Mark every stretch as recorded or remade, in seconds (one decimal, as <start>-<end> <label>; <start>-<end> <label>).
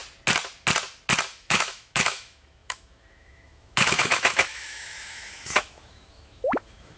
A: 0.0-1.4 recorded; 1.4-7.0 remade